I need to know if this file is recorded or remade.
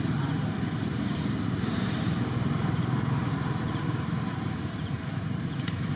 remade